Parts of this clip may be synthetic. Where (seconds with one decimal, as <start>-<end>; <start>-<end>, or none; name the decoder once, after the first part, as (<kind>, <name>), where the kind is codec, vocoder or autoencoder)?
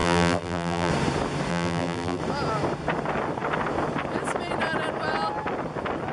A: 0.0-0.9 (vocoder, BigVGAN v2); 1.5-2.2